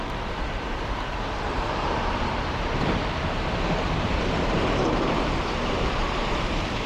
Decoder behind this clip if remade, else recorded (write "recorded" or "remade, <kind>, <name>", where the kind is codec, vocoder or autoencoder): remade, vocoder, BigVGAN v2